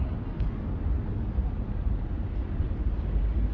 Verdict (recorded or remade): recorded